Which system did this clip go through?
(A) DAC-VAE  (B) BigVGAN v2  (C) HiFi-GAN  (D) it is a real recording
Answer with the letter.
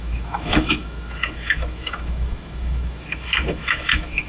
A